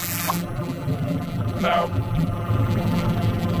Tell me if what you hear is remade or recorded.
remade